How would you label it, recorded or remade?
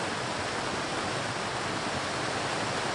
recorded